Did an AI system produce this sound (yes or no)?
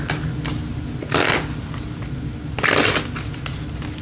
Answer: no